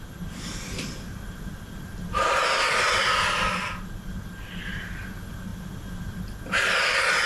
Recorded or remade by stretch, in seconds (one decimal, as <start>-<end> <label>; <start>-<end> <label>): 0.0-7.3 recorded